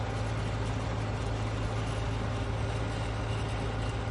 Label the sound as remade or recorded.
recorded